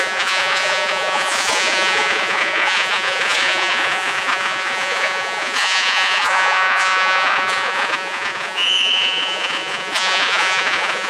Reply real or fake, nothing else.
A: fake